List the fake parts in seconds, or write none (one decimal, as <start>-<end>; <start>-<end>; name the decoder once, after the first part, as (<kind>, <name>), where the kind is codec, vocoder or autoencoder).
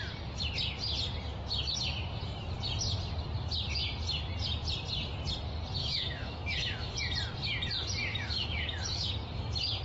5.8-7.0 (autoencoder, DAC-VAE); 8.1-9.1